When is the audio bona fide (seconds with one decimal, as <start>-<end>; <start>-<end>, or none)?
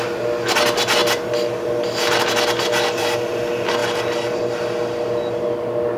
0.0-1.0; 3.0-3.8; 5.5-6.0